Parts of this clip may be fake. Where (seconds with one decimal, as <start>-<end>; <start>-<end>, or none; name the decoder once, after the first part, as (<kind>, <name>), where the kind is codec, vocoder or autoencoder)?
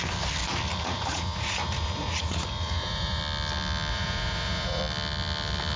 0.7-3.2 (vocoder, Vocos); 3.9-4.8